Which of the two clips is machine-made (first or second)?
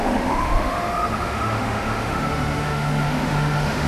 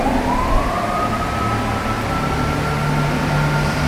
first